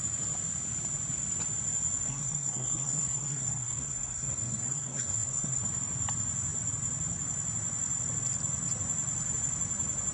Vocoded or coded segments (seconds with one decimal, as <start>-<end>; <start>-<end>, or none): 2.1-5.6